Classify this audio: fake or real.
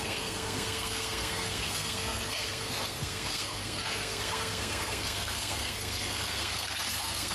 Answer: fake